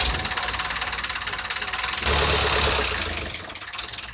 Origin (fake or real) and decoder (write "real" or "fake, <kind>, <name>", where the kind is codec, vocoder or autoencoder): real